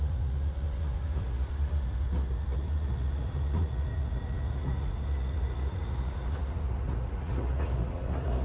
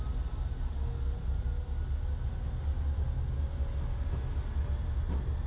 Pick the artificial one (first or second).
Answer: first